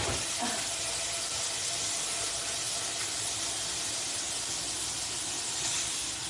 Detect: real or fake real